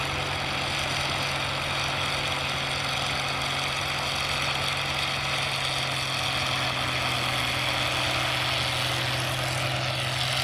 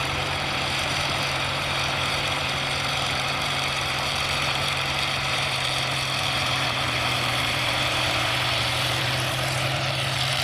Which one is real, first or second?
first